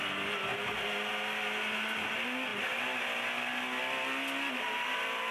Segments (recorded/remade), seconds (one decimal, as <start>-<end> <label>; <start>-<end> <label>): 0.0-5.3 recorded